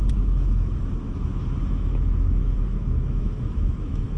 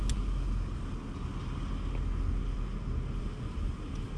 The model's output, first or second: first